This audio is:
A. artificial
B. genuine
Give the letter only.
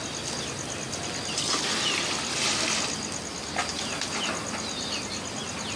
B